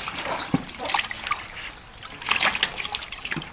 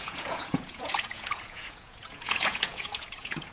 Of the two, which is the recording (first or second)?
first